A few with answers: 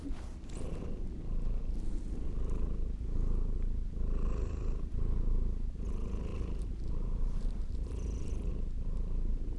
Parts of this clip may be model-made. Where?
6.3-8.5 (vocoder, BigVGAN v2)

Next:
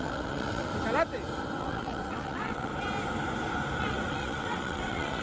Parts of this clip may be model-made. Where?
0.0-0.7 (vocoder, WaveNeXt); 1.6-2.7; 3.8-5.2

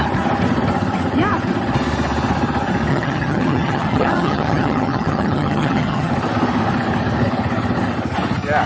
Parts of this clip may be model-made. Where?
2.9-6.1 (vocoder, HiFi-GAN)

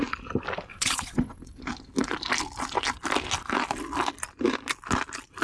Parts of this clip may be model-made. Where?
0.7-1.6 (vocoder, WaveNeXt)

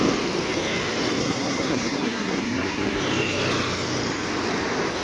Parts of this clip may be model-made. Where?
1.2-3.0 (codec, SNAC)

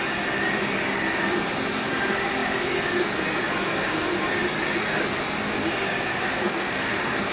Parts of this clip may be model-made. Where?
6.4-7.3 (codec, SNAC)